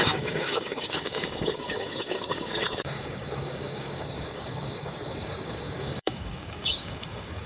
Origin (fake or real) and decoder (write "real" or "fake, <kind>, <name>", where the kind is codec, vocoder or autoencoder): fake, codec, DAC